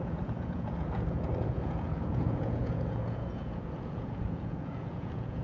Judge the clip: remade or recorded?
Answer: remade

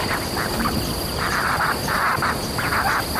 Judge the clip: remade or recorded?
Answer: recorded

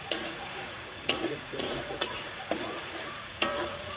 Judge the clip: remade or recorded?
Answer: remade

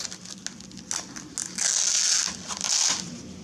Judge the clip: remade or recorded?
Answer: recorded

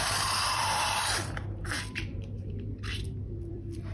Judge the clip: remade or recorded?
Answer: remade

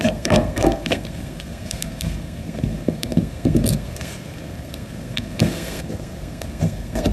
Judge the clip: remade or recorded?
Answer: remade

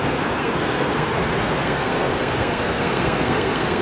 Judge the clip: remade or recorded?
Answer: remade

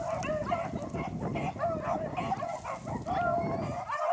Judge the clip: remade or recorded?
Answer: recorded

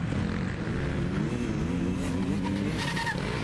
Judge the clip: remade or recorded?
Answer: recorded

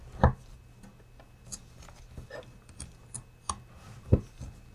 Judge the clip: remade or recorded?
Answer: recorded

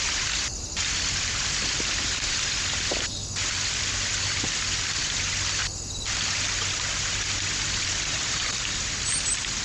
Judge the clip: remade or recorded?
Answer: recorded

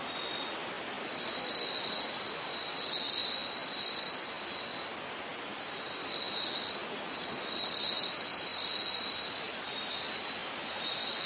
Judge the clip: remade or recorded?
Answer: recorded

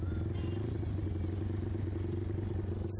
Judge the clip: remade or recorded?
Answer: recorded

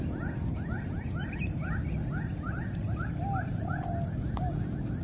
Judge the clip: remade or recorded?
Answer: recorded